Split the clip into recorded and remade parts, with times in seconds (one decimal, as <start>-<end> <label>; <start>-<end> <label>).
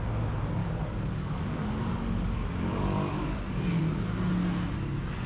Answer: 0.0-0.6 recorded; 0.6-3.8 remade; 3.8-5.3 recorded